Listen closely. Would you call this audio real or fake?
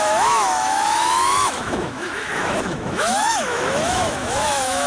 fake